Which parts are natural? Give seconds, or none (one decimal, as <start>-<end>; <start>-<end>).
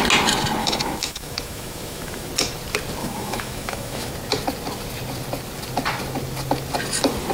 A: 0.0-0.6; 2.3-3.0; 4.1-7.3